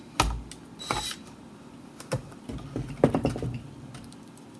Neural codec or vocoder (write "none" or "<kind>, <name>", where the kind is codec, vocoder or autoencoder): none